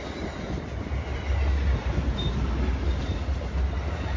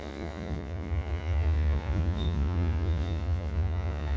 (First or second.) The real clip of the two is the first